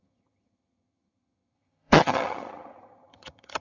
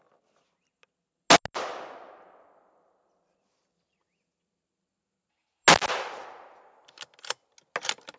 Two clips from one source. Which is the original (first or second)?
second